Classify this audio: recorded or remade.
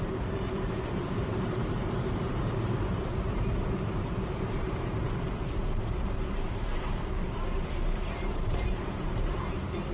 remade